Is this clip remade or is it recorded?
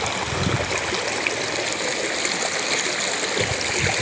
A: recorded